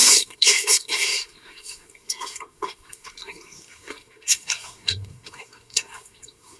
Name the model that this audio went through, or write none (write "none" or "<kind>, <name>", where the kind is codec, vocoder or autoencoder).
codec, SNAC